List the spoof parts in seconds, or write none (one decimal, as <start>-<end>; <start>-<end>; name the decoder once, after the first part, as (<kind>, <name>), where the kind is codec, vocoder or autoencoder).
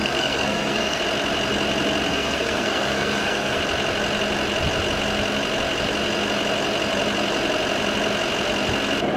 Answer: 0.0-1.0 (codec, SNAC); 2.1-3.6